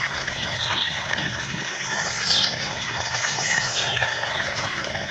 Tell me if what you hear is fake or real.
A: fake